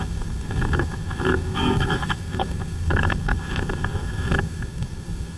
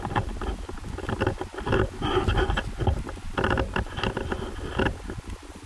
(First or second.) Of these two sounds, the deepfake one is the first